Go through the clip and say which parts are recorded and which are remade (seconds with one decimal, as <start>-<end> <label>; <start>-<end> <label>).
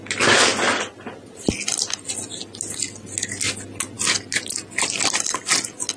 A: 0.0-6.0 recorded